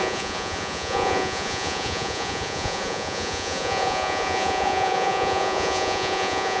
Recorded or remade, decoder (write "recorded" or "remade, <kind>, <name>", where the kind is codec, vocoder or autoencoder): remade, vocoder, Vocos